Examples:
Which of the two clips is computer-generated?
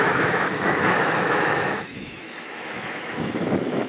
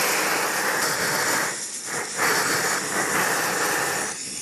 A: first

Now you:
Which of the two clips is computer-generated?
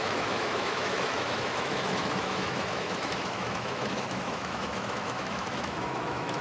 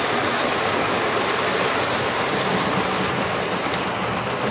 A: first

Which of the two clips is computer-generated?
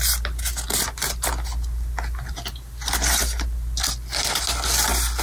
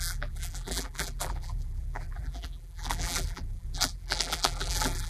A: second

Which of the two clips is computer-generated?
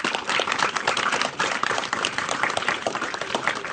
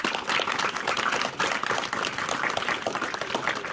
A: first